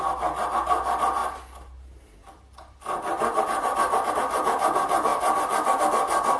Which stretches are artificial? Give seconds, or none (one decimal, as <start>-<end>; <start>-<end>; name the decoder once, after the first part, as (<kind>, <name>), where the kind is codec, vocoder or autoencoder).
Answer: none